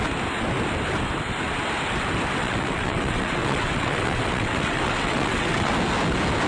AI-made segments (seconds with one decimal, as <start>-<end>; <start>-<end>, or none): 2.4-5.7